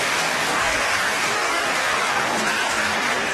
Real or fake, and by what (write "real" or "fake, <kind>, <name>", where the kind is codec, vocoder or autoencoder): fake, codec, DAC